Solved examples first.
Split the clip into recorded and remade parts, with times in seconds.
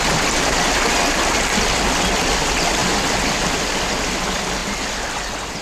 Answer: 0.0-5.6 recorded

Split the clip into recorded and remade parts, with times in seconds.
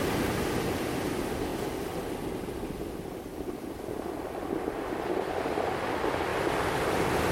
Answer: 0.0-1.5 recorded; 1.5-4.8 remade; 4.8-7.3 recorded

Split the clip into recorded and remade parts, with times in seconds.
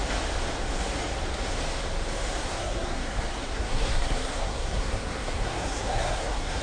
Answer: 0.0-2.4 recorded; 2.4-6.6 remade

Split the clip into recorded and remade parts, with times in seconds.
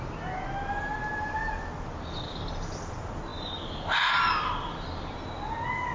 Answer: 0.0-5.9 recorded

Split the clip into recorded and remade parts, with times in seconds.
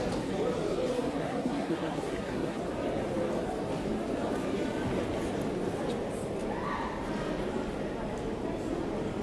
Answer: 0.0-0.9 recorded; 0.9-2.6 remade; 2.6-9.2 recorded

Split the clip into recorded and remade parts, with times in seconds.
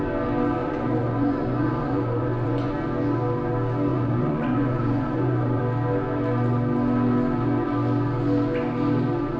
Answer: 0.0-0.6 recorded; 0.6-2.7 remade; 2.7-3.9 recorded; 3.9-5.6 remade; 5.6-9.4 recorded